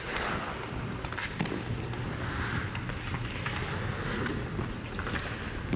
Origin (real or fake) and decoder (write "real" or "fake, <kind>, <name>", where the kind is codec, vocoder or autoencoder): real